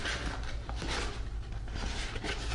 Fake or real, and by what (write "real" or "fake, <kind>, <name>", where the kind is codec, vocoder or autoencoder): real